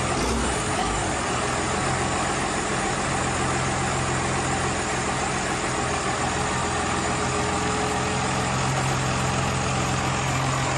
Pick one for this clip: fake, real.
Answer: real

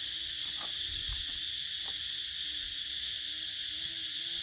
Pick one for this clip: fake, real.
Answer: real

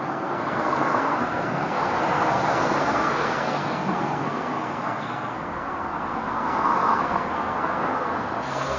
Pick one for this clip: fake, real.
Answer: fake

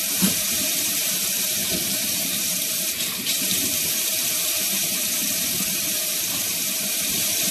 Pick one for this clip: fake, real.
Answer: fake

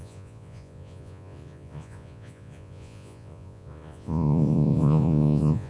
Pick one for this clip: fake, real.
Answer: fake